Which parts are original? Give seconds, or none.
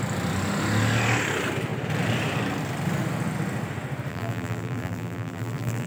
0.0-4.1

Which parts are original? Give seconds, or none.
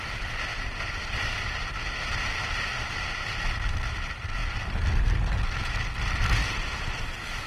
0.0-0.5; 1.7-4.4; 4.9-6.4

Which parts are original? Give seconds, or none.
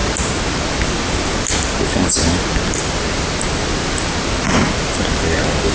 0.0-5.7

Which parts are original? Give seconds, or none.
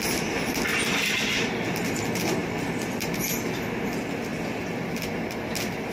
0.0-2.4; 3.2-4.3; 5.1-5.9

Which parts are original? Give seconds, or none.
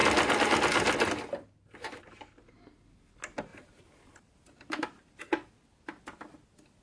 0.0-3.5; 5.5-6.8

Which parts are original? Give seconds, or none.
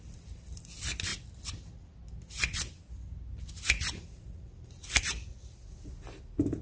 0.0-6.6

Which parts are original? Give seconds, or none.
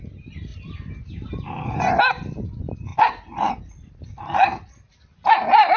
0.0-5.8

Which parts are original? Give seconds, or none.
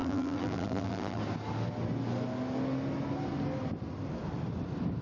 1.2-5.0